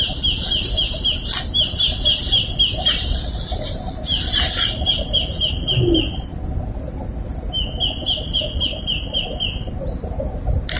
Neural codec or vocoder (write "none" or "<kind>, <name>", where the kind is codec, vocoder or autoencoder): none